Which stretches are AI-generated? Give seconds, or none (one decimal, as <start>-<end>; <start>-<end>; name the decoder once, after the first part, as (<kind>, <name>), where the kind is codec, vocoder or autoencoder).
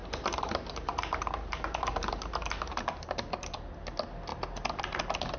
0.0-3.2 (vocoder, BigVGAN v2)